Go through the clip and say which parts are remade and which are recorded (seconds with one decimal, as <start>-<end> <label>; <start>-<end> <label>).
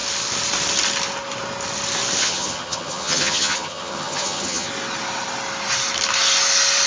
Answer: 0.0-2.2 recorded; 2.2-4.7 remade; 4.7-6.9 recorded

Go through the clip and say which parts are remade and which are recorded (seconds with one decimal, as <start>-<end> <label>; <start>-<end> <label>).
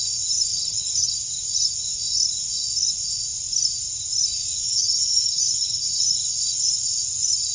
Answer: 0.0-0.5 recorded; 0.5-1.1 remade; 1.1-4.7 recorded; 4.7-6.2 remade; 6.2-7.5 recorded